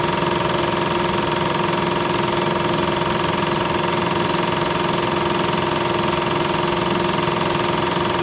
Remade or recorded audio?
recorded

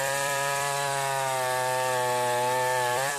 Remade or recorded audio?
remade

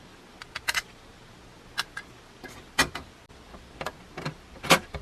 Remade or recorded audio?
recorded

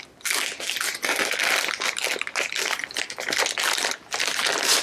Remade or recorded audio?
recorded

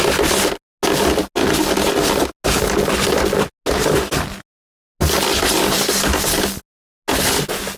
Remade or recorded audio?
recorded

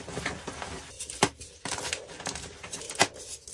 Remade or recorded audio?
remade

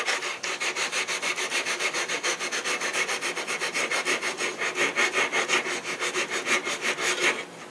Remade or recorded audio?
recorded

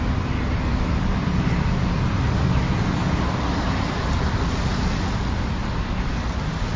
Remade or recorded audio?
recorded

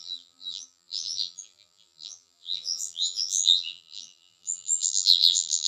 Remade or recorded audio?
remade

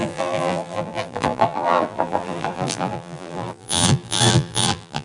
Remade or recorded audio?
remade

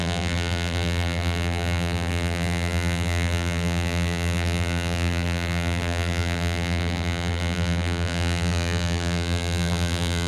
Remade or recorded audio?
remade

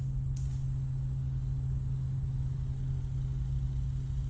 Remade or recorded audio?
recorded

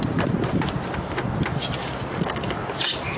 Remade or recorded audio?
recorded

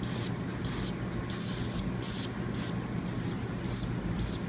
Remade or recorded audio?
recorded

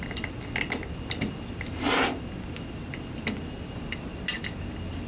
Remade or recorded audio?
recorded